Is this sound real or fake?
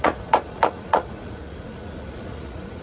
fake